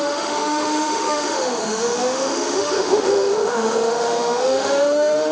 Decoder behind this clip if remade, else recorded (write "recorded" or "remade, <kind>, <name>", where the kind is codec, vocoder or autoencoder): remade, autoencoder, DAC-VAE